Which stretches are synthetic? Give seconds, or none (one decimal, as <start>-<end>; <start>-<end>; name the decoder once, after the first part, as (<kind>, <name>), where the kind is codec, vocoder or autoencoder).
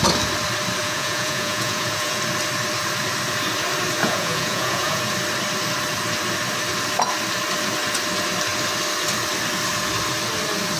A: 0.8-2.2 (vocoder, Vocos); 4.0-5.0